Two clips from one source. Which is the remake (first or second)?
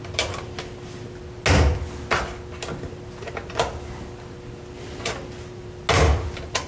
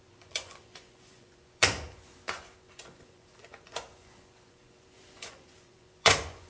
second